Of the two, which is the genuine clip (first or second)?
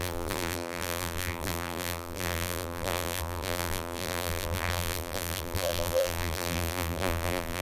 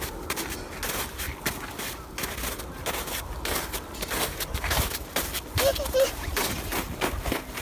second